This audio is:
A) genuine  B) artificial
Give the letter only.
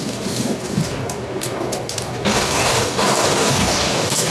B